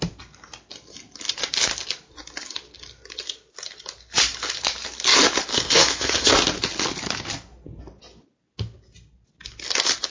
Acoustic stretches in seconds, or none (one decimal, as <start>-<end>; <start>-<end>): 0.0-5.5; 6.3-10.1